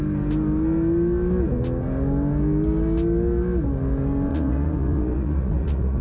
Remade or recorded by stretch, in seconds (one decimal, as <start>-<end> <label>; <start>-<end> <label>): 0.0-4.3 recorded; 4.3-6.0 remade